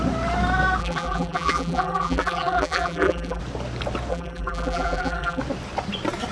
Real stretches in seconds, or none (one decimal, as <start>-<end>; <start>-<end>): 0.0-0.8; 3.4-4.1; 5.4-6.3